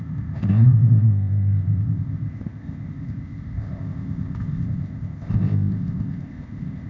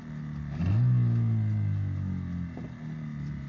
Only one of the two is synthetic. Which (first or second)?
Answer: first